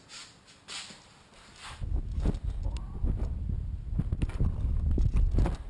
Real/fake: real